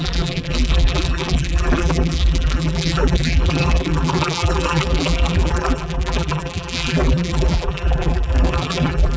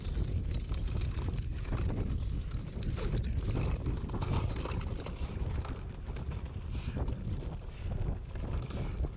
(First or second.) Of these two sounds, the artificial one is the first